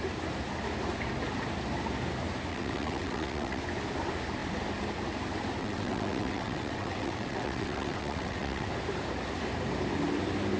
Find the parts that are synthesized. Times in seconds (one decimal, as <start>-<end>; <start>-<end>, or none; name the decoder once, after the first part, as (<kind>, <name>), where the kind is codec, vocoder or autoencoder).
2.5-3.6 (vocoder, WaveNeXt); 5.6-8.7